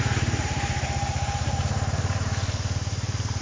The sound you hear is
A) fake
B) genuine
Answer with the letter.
A